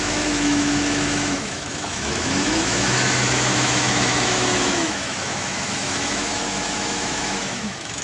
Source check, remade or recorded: remade